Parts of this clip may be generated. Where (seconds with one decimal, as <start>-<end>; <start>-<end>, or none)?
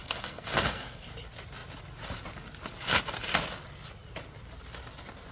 0.0-1.1